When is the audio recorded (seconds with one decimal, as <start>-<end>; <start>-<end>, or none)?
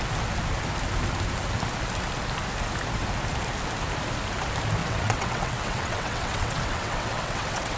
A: 0.0-4.8